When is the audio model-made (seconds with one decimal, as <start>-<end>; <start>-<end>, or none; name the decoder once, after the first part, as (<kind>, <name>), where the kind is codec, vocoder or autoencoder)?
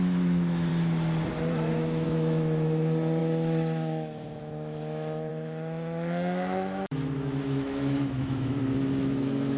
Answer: 0.0-0.7 (autoencoder, DAC-VAE); 1.7-9.6